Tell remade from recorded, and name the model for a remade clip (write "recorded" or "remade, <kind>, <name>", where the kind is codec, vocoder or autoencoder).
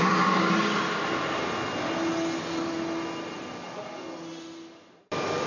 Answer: recorded